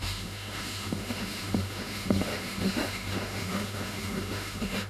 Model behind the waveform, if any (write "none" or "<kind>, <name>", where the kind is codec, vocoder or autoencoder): autoencoder, DAC-VAE